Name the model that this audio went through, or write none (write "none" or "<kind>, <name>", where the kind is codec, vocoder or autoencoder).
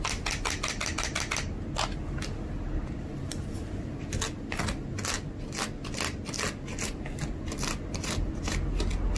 none